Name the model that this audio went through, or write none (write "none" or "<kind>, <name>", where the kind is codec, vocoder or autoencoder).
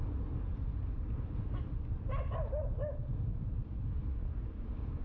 none